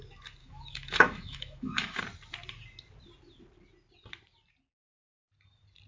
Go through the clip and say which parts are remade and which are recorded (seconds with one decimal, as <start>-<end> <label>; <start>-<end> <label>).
0.0-0.4 recorded; 0.4-2.0 remade; 2.0-5.9 recorded